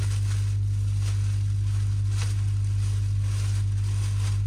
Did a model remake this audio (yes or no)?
no